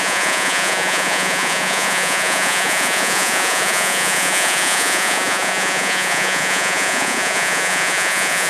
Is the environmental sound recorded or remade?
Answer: remade